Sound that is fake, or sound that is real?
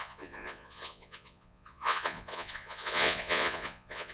fake